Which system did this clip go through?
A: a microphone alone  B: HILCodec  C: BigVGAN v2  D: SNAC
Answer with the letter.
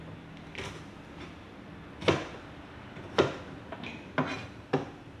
A